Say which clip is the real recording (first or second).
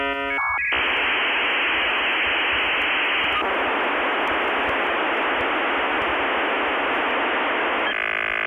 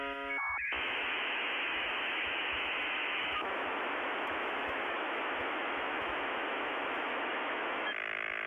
first